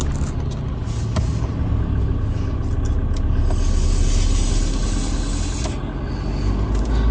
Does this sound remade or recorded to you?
recorded